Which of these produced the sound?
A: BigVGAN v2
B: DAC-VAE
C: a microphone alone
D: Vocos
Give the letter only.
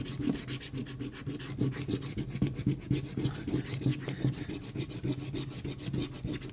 C